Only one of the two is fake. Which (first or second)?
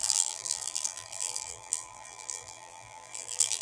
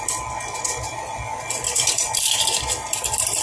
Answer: first